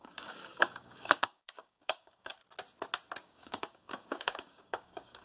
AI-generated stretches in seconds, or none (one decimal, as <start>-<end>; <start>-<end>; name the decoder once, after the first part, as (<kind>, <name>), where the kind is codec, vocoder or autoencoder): 0.0-2.3 (codec, DAC); 3.2-5.2